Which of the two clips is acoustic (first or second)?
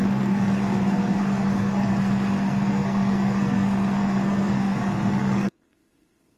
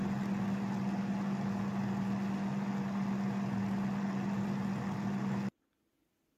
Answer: second